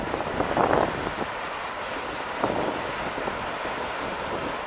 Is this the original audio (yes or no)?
yes